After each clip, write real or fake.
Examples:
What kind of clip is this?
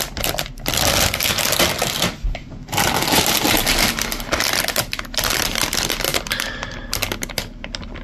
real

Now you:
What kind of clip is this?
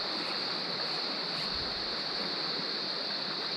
real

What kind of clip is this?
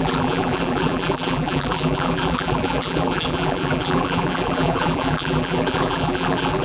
fake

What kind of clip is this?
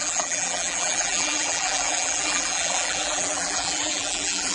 fake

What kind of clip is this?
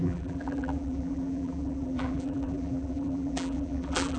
fake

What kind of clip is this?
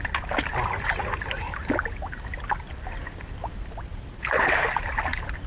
real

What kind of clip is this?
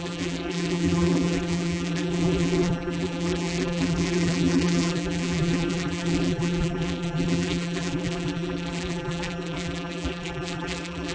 fake